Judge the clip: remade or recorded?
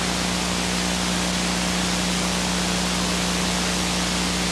recorded